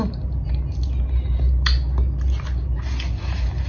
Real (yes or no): yes